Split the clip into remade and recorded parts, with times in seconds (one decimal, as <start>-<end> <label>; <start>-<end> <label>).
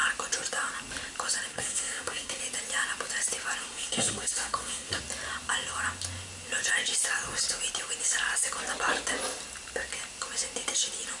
0.0-1.5 recorded; 1.5-2.4 remade; 2.4-3.6 recorded; 3.6-5.0 remade; 5.0-11.2 recorded